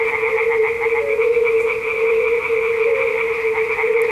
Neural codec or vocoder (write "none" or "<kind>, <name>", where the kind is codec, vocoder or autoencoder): none